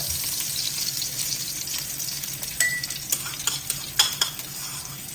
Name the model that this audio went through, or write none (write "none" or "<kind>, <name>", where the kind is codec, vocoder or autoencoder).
none